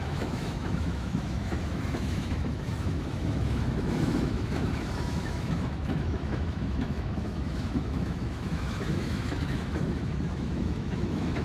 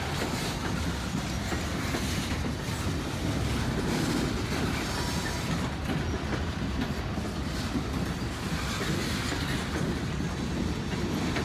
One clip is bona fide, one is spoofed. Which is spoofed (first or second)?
first